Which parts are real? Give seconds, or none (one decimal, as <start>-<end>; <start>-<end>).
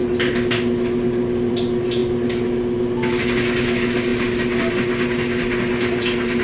0.0-6.4